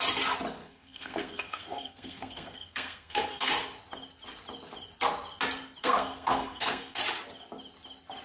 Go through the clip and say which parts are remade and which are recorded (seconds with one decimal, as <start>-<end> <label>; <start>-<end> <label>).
0.0-0.6 recorded; 0.6-3.5 remade; 3.5-5.8 recorded; 5.8-7.0 remade; 7.0-8.2 recorded